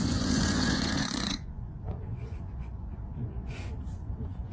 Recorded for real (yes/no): no